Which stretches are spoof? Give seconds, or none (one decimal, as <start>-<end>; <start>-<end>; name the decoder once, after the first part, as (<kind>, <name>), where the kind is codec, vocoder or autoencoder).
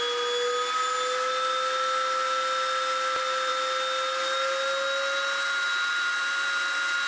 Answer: none